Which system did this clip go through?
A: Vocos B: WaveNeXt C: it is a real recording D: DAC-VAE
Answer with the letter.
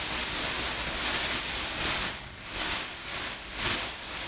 C